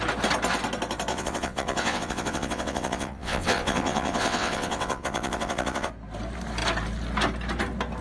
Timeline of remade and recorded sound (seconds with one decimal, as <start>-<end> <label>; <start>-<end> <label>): 0.0-1.1 recorded; 1.1-5.9 remade; 5.9-8.0 recorded